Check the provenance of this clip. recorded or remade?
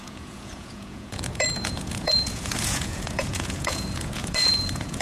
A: remade